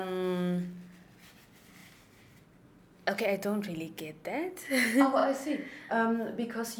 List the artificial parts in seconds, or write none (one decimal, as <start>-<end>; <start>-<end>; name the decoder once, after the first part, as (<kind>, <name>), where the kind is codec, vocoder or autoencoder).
none